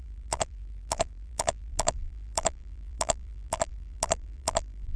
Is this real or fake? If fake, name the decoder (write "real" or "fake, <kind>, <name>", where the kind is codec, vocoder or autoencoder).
fake, vocoder, BigVGAN v2